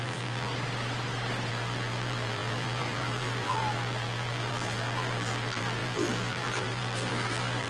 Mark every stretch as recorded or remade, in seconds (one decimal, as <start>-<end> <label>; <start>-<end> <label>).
0.0-0.5 remade; 0.5-1.5 recorded; 1.5-7.7 remade